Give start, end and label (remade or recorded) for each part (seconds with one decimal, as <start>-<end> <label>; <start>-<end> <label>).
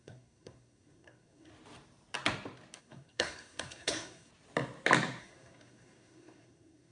0.0-1.5 remade; 1.5-2.8 recorded; 2.8-4.3 remade; 4.3-5.2 recorded; 5.2-6.9 remade